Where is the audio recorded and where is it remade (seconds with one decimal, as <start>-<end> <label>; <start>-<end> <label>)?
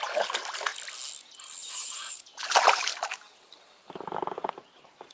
0.0-1.6 recorded; 1.6-2.4 remade; 2.4-5.1 recorded